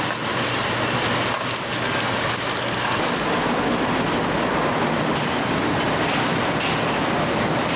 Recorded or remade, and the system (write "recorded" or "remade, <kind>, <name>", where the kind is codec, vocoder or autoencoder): recorded